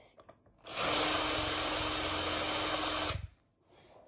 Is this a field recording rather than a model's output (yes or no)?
yes